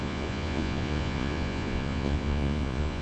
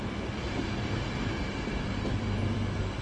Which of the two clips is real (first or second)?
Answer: second